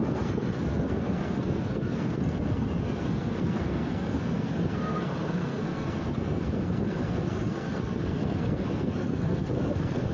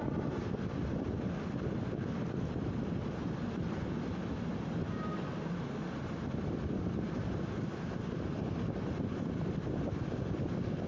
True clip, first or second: second